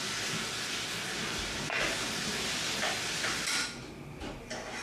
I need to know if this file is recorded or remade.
recorded